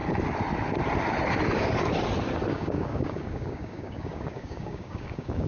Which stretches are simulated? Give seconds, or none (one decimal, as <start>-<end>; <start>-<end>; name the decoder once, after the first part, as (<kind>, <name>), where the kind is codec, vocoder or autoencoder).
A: 2.5-5.5 (codec, DAC)

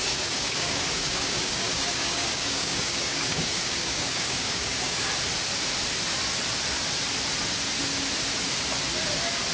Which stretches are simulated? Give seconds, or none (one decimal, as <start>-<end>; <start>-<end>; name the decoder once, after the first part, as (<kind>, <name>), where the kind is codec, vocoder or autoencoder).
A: 0.0-5.1 (codec, DAC)

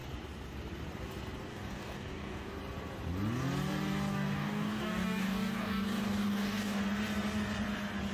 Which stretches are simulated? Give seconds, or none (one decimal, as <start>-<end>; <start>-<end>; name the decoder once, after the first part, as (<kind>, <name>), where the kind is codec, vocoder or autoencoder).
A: 1.5-2.6 (codec, DAC); 4.1-6.8

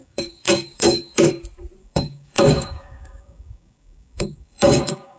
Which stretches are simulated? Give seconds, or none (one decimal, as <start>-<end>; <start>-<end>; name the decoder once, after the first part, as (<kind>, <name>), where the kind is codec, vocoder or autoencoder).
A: 0.0-1.3 (codec, DAC); 1.8-5.2

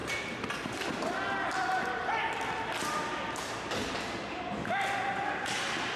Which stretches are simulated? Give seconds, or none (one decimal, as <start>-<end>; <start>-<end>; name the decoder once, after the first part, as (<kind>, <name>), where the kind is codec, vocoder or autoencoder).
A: none